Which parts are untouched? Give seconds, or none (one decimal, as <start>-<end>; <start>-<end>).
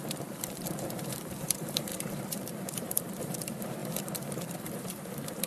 none